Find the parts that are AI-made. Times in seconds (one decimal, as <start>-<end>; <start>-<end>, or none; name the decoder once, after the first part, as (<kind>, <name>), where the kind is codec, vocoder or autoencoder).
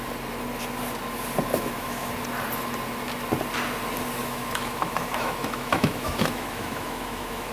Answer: 1.5-2.1 (autoencoder, DAC-VAE); 4.2-7.5